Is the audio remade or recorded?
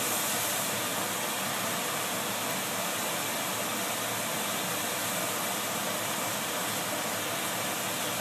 recorded